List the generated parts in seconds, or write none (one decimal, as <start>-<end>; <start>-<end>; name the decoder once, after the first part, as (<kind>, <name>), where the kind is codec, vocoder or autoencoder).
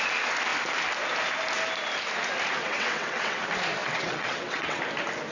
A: 2.6-3.4 (vocoder, WaveNeXt); 3.8-4.8